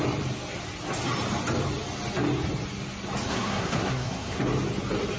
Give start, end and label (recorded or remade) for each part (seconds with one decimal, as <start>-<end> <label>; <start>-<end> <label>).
0.0-3.3 recorded; 3.3-4.4 remade; 4.4-5.2 recorded